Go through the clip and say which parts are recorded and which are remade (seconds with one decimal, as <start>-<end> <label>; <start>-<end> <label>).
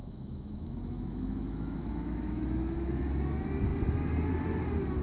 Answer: 0.0-3.0 remade; 3.0-5.0 recorded